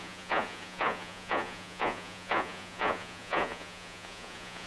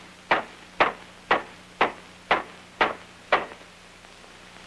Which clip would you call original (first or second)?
second